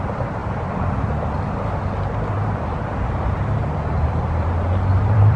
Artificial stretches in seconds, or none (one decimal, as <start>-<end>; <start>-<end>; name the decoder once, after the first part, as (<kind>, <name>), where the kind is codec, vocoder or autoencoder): 0.0-5.4 (vocoder, BigVGAN v2)

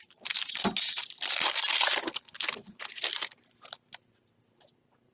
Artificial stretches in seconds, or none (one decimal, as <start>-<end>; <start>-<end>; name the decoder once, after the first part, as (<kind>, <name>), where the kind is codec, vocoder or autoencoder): 0.0-1.0 (vocoder, BigVGAN v2); 1.7-5.1